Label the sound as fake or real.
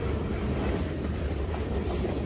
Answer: real